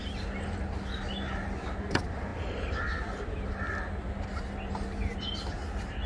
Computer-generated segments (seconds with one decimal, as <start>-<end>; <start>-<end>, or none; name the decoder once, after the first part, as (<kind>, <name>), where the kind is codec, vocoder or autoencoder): none